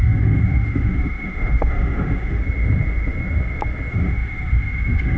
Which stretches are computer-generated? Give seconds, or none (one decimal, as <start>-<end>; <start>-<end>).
0.0-2.4; 3.9-5.2

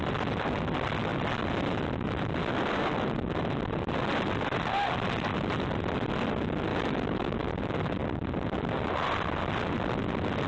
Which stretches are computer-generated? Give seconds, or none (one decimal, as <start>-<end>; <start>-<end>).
6.7-7.6

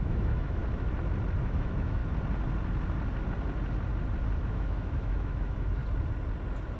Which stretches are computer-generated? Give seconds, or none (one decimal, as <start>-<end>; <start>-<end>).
0.0-0.6; 1.4-2.0; 4.4-5.8

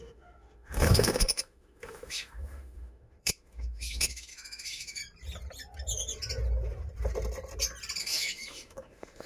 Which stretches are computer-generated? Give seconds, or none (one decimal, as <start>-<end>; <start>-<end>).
0.0-5.0; 8.0-9.3

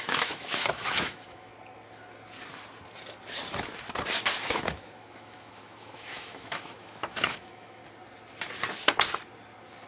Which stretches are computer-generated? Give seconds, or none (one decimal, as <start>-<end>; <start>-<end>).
0.0-1.5; 4.4-7.8

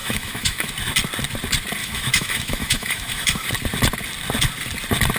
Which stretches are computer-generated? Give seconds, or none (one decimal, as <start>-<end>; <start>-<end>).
0.0-0.7; 1.8-3.5

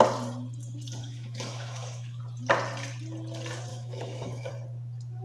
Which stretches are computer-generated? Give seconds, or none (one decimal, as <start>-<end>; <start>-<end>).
1.0-2.2; 3.7-4.5

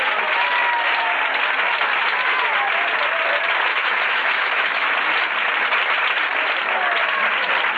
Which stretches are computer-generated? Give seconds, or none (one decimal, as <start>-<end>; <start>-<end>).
3.7-4.9